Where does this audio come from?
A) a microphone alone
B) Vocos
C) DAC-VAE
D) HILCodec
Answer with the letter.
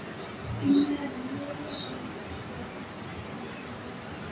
A